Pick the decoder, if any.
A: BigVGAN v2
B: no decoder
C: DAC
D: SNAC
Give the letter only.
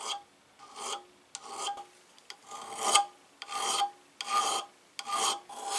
B